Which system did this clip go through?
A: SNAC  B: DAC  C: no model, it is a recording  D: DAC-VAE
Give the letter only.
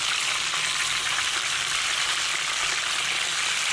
C